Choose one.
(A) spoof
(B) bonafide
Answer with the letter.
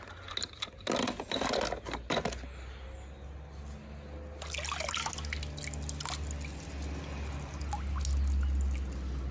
B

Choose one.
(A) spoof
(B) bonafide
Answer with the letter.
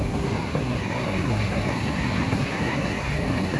A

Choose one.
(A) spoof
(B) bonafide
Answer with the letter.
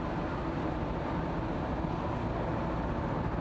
B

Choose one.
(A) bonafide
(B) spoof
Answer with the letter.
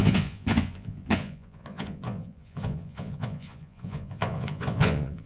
B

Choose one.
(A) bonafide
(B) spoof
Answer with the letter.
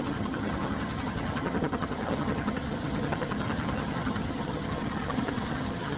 B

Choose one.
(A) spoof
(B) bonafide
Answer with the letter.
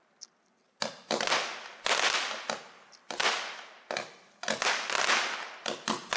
B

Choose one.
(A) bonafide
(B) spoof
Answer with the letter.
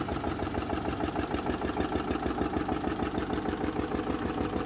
A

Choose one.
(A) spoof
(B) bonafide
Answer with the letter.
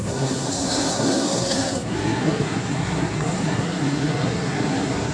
A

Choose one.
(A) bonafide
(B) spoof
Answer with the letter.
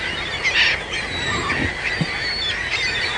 A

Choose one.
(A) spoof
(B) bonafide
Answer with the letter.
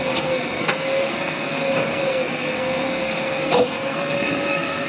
A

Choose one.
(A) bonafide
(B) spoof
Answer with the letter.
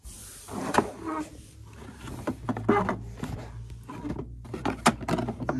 A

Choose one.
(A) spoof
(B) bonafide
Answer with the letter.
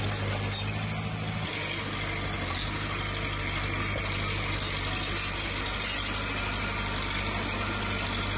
B